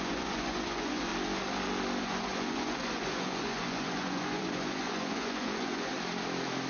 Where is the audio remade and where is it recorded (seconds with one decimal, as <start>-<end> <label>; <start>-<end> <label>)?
0.0-1.1 remade; 1.1-2.0 recorded; 2.0-5.9 remade; 5.9-6.7 recorded